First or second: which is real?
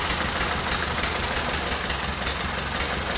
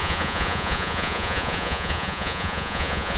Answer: first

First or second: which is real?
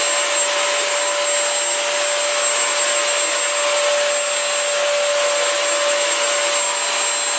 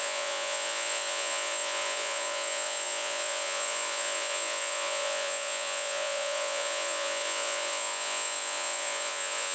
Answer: first